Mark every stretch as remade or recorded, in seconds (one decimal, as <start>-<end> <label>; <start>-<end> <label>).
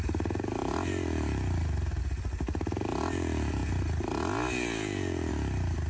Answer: 0.0-0.6 recorded; 0.6-2.0 remade; 2.0-5.9 recorded